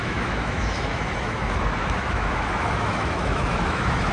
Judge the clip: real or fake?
fake